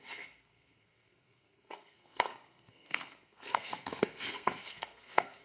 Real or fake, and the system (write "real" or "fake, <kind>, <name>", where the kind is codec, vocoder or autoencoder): fake, codec, SNAC